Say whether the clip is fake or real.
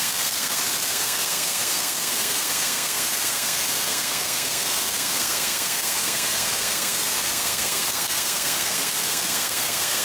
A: fake